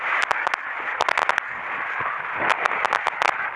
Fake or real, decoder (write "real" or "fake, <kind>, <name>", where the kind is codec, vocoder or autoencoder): real